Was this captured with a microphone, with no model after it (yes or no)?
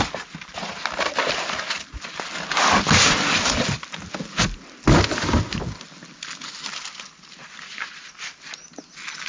yes